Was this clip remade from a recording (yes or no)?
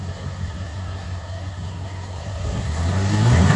yes